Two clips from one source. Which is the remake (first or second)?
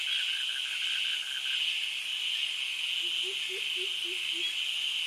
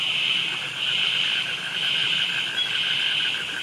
second